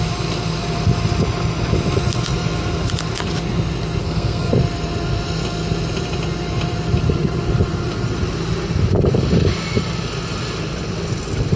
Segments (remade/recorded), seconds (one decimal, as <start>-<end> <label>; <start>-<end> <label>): 0.0-4.0 recorded; 4.0-4.5 remade; 4.5-11.6 recorded